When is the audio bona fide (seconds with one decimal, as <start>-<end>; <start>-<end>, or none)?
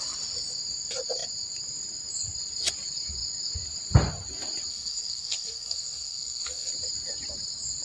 0.0-4.7; 6.7-7.8